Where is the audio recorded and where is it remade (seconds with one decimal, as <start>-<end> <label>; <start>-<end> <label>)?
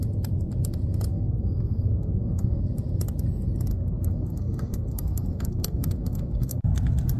0.0-1.1 recorded; 1.1-2.6 remade; 2.6-3.7 recorded; 3.7-6.6 remade; 6.6-7.2 recorded